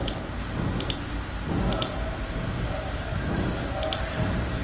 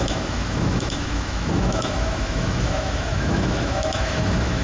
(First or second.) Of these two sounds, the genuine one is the first